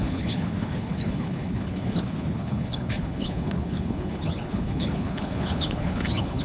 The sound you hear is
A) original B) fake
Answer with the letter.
B